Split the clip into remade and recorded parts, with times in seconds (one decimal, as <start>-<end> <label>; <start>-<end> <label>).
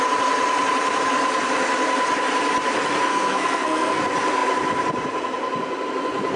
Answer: 0.0-3.1 recorded; 3.1-4.0 remade; 4.0-6.4 recorded